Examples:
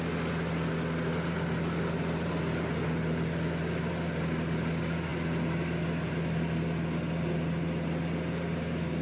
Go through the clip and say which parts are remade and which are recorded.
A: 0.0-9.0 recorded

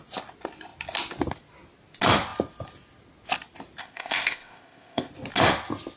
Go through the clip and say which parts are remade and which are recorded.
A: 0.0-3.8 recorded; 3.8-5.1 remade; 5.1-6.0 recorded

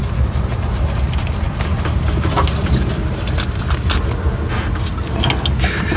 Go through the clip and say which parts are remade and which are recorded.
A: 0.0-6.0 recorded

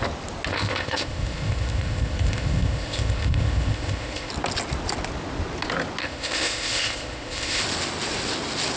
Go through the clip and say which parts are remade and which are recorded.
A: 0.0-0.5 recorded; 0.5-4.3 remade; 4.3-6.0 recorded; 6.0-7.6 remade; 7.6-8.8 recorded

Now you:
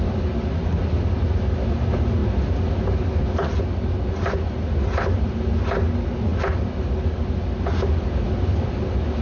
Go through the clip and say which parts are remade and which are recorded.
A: 0.0-9.2 recorded

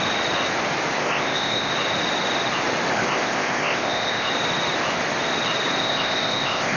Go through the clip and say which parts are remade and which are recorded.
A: 0.0-1.0 recorded; 1.0-1.7 remade; 1.7-2.9 recorded; 2.9-4.3 remade; 4.3-5.8 recorded; 5.8-6.8 remade